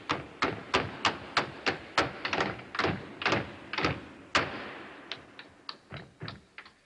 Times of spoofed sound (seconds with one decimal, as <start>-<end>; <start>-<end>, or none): none